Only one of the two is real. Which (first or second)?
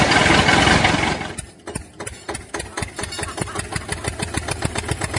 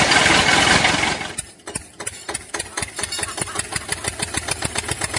first